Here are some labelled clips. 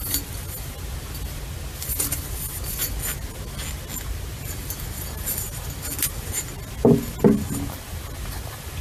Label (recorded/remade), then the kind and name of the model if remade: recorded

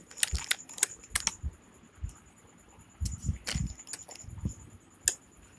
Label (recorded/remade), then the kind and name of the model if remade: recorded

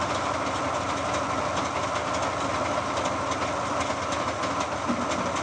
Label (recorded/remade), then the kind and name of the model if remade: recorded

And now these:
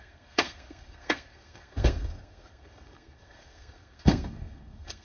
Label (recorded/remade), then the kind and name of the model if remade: remade, codec, SNAC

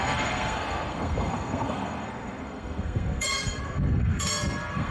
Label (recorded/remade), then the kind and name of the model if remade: remade, codec, SNAC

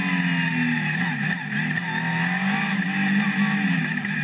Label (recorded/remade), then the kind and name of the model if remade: recorded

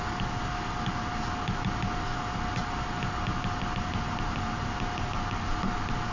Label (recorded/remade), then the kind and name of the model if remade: recorded